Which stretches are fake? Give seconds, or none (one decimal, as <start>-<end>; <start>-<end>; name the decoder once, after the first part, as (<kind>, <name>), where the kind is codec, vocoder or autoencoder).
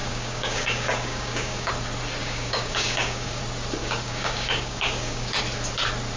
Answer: 0.0-1.7 (codec, DAC); 2.2-3.4; 3.8-5.4